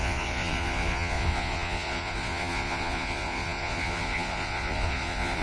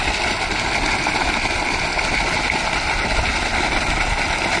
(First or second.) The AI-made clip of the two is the first